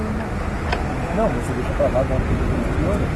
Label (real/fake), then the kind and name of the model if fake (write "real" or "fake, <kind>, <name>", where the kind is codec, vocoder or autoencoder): real